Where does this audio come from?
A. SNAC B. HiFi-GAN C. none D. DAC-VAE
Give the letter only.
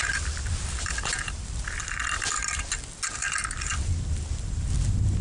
C